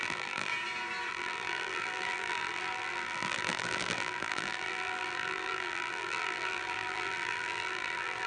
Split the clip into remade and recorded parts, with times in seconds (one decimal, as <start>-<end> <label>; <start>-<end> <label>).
0.0-0.5 remade; 0.5-1.1 recorded; 1.1-8.3 remade